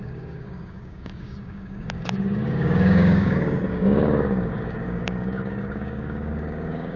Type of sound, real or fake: fake